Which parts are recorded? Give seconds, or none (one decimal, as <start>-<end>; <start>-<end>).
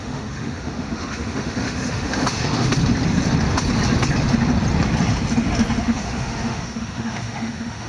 2.7-5.8